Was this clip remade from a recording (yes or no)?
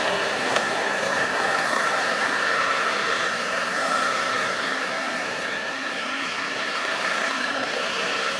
yes